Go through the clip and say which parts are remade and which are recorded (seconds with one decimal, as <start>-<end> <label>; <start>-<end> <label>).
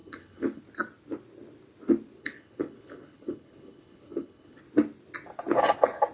0.0-0.6 remade; 0.6-2.2 recorded; 2.2-4.6 remade; 4.6-6.1 recorded